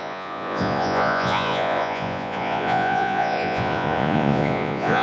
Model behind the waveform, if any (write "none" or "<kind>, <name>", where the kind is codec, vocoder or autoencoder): vocoder, Vocos